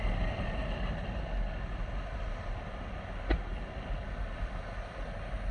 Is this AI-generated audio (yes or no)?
no